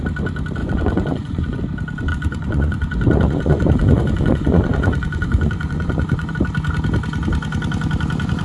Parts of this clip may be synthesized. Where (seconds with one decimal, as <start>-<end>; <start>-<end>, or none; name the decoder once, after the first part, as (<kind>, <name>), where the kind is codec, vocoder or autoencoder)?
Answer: 0.6-1.6 (vocoder, Vocos); 2.1-6.3